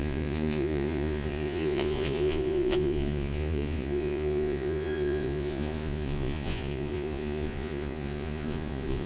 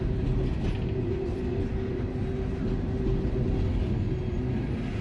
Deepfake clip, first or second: first